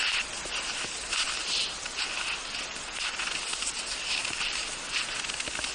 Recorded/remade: recorded